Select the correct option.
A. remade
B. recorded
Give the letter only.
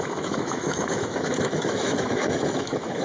A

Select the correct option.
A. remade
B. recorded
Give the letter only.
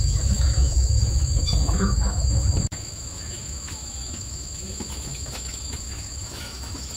A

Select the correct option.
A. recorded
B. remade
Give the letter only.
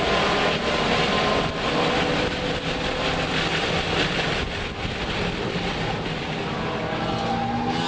A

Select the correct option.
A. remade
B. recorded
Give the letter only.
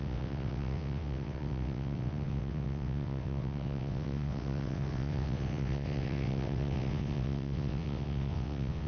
A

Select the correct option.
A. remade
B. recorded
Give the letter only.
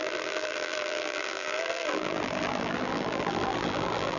A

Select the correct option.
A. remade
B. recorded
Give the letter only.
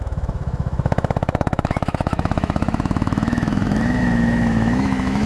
A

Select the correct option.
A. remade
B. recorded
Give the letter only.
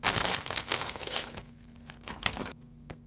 A